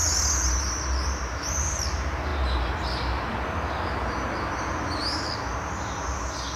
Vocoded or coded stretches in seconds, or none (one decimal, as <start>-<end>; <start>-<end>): 0.6-2.3